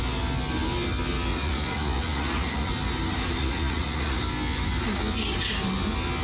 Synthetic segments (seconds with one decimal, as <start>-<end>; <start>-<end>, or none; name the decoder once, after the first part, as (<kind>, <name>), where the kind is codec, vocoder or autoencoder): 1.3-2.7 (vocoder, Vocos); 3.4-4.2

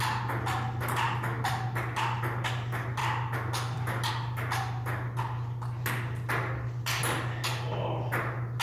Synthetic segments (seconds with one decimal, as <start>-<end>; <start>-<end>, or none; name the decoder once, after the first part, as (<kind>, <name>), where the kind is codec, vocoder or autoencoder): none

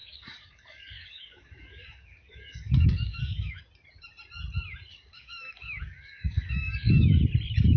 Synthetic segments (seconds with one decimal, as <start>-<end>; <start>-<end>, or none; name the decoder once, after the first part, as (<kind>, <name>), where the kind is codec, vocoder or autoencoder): 0.0-3.6 (codec, DAC); 4.9-7.0

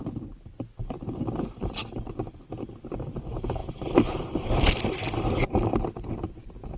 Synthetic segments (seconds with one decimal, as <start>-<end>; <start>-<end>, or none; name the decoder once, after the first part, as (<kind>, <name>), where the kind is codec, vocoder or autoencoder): 0.0-1.8 (vocoder, BigVGAN v2); 2.5-6.8